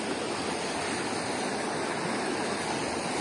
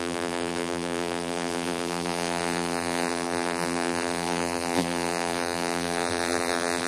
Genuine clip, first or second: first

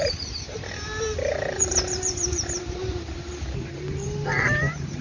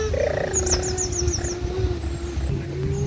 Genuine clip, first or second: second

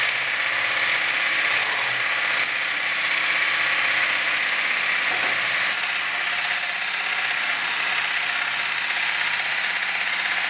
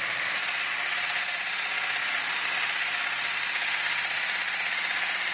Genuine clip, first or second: first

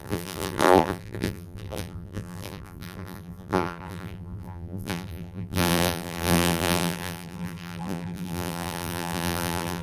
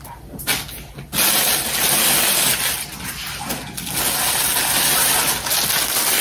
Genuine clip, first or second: second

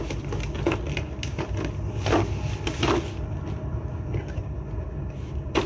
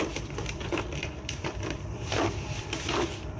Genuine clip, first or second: first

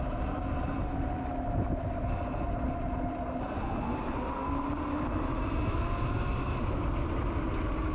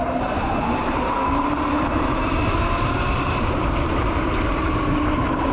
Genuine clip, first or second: first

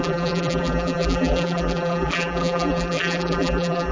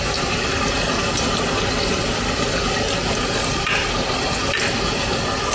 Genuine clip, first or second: second